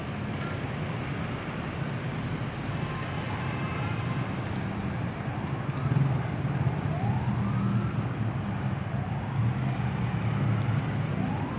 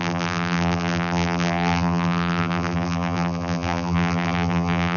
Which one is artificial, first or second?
second